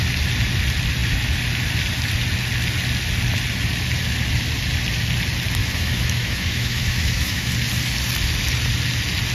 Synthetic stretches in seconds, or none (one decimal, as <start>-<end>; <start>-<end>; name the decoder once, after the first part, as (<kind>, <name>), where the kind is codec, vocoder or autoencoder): 5.6-7.5 (autoencoder, DAC-VAE)